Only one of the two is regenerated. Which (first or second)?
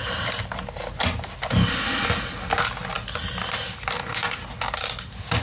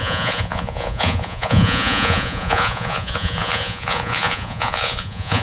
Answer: second